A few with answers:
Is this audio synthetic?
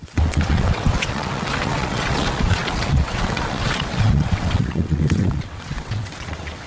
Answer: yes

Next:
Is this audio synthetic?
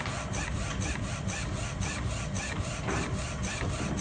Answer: no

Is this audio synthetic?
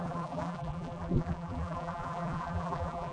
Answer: yes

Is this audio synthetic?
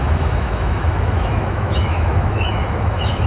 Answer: yes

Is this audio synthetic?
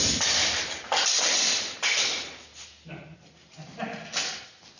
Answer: no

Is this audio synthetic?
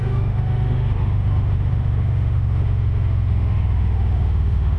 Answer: yes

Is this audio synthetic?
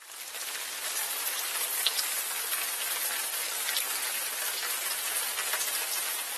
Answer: no